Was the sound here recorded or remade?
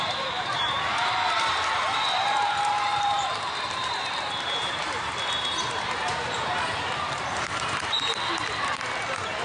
remade